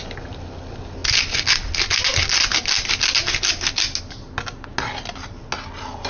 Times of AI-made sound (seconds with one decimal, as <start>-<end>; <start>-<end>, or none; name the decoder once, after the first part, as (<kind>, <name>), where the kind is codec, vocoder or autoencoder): none